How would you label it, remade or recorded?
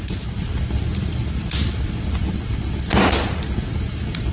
recorded